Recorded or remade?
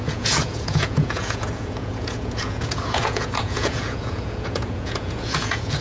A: remade